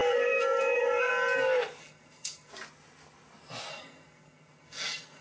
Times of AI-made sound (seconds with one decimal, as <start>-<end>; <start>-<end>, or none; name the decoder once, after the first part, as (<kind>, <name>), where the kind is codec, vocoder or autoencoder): 0.0-1.1 (codec, SNAC); 1.8-2.5; 3.7-5.2